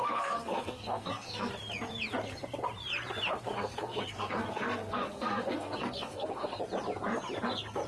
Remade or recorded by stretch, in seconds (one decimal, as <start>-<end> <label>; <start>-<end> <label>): 0.0-1.5 remade; 1.5-3.5 recorded; 3.5-6.6 remade; 6.6-7.9 recorded